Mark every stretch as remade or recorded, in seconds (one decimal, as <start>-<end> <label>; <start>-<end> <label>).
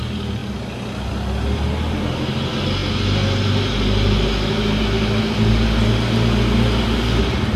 0.0-7.6 recorded